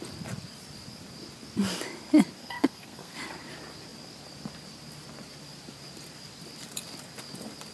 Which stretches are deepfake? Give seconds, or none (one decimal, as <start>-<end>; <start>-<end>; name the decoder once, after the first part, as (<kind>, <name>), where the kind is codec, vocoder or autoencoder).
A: 2.4-3.2 (codec, SNAC)